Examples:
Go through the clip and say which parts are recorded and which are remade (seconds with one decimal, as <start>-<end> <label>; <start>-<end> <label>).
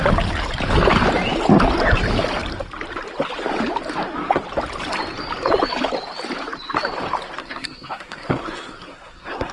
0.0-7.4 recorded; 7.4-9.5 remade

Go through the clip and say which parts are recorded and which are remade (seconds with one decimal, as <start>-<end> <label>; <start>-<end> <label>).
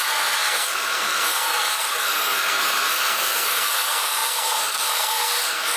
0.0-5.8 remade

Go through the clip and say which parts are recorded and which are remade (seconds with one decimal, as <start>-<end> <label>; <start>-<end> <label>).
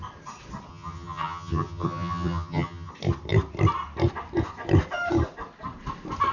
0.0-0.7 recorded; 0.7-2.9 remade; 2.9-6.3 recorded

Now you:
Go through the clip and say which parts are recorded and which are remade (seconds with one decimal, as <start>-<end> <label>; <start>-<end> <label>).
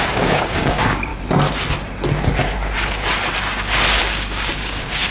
0.0-1.1 remade; 1.1-4.0 recorded; 4.0-5.1 remade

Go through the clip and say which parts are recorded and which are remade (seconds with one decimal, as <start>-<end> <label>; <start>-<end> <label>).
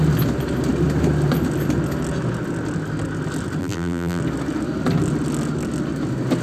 0.0-3.6 recorded; 3.6-4.2 remade; 4.2-6.4 recorded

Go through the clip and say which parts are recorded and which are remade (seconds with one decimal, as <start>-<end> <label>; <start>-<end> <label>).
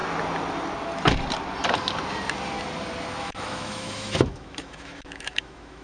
0.0-3.2 recorded; 3.2-5.8 remade